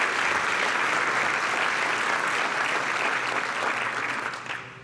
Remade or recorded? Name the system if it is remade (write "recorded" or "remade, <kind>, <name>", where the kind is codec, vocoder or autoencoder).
recorded